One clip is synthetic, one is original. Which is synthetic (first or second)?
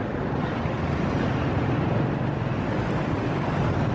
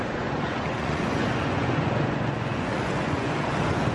second